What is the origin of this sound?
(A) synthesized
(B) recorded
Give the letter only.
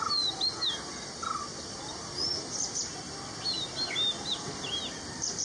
B